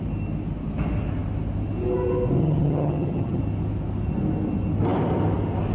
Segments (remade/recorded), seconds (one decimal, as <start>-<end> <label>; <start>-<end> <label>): 0.0-2.4 recorded; 2.4-3.4 remade; 3.4-5.7 recorded